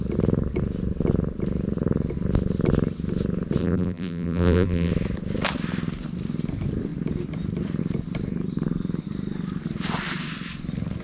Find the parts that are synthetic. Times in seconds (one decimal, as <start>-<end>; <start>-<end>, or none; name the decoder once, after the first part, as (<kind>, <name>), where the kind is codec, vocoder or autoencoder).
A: 3.6-4.9 (vocoder, BigVGAN v2)